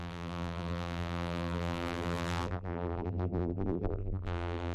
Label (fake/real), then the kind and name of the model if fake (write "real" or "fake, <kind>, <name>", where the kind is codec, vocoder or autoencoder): fake, vocoder, BigVGAN v2